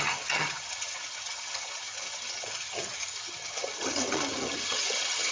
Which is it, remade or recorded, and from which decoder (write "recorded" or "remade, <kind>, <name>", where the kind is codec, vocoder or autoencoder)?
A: remade, vocoder, HiFi-GAN